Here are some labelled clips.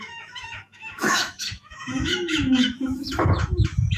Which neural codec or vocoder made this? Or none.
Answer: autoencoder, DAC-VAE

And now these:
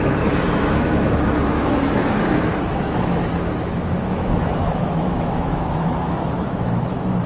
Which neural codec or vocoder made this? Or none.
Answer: autoencoder, DAC-VAE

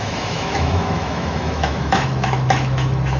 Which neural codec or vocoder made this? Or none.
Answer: autoencoder, DAC-VAE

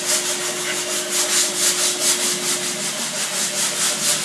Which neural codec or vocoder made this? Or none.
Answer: none